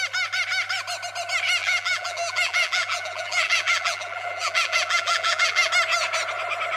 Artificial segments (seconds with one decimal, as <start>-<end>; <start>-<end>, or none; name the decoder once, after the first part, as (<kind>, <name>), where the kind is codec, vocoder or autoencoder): 1.6-5.7 (vocoder, BigVGAN v2)